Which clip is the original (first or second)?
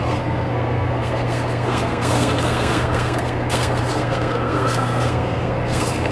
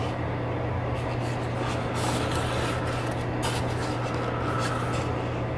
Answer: second